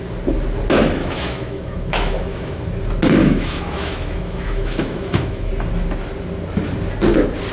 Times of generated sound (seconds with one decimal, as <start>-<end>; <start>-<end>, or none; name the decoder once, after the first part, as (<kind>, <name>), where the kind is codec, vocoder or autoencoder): 1.0-2.6 (autoencoder, DAC-VAE); 3.2-5.5